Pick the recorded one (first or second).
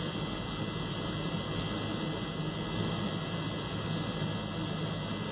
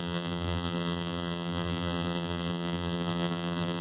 first